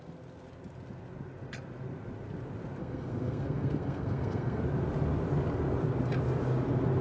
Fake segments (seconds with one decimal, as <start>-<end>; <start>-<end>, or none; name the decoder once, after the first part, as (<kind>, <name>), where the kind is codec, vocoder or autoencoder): 2.8-4.6 (codec, SNAC)